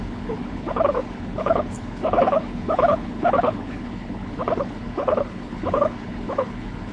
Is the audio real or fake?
fake